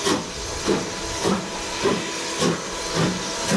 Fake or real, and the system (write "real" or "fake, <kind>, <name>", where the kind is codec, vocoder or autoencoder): real